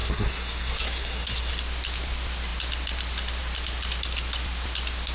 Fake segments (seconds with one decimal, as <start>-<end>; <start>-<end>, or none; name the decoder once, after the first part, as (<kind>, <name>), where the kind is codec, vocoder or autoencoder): 0.0-1.5 (codec, SNAC)